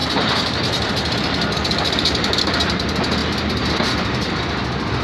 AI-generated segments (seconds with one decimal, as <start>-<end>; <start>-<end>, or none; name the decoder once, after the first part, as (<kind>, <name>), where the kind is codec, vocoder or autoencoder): 0.0-2.4 (vocoder, BigVGAN v2)